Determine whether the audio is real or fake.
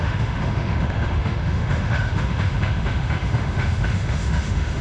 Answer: fake